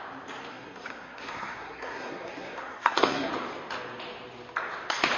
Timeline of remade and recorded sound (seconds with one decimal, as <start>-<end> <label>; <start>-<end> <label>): 0.0-0.5 recorded; 0.5-3.3 remade; 3.3-5.2 recorded